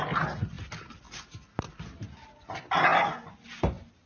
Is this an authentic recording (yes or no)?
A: yes